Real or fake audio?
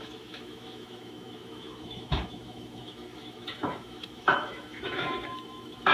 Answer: fake